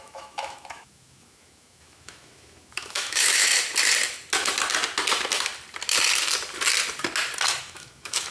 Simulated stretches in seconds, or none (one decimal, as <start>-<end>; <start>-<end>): 0.0-3.5; 7.6-8.3